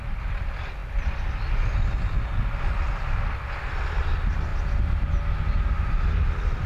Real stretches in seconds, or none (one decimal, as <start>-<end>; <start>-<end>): 0.0-6.7